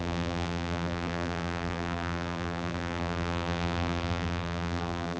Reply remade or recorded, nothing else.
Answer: remade